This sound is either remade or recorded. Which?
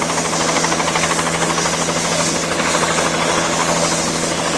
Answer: recorded